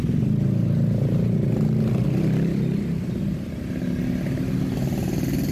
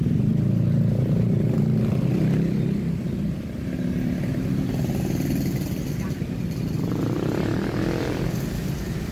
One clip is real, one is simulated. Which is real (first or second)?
first